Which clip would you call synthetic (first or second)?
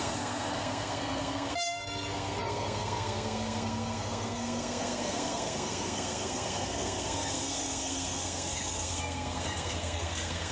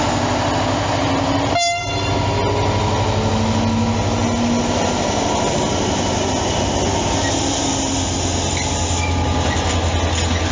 first